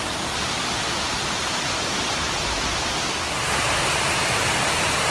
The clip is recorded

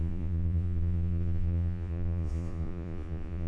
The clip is remade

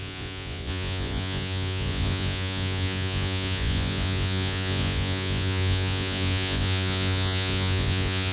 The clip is remade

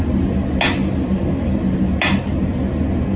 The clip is recorded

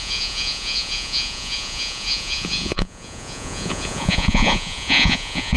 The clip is remade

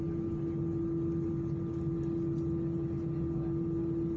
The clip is recorded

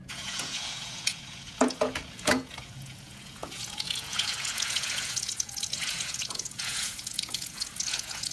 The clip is remade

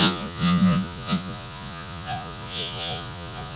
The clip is remade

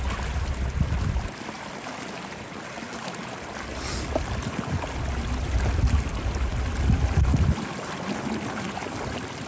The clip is recorded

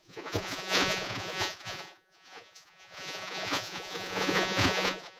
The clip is remade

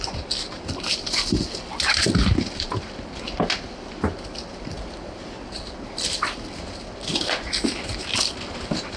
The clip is recorded